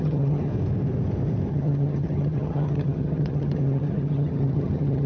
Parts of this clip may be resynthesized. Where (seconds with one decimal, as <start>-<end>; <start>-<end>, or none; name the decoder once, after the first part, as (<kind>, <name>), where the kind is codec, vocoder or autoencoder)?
0.0-0.5 (vocoder, HiFi-GAN); 1.5-5.1